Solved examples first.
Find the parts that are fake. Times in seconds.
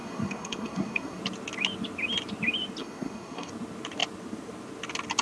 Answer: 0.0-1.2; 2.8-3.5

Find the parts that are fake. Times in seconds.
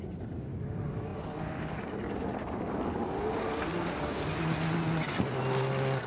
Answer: none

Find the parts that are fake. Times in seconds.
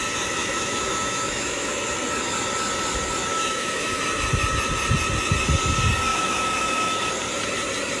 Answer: 0.4-1.7; 3.3-4.0; 6.1-7.1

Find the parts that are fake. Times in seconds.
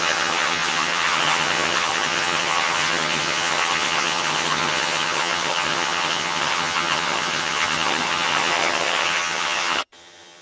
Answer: 0.0-10.4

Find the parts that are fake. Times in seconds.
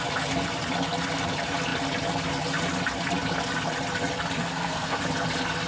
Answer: 4.4-5.0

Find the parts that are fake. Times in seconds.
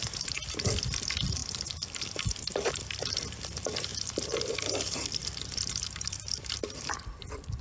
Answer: 0.0-7.6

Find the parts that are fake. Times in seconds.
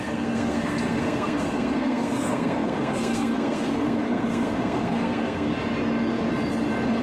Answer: 0.0-5.5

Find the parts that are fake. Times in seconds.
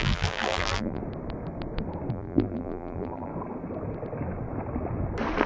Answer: 0.0-1.0; 2.1-3.3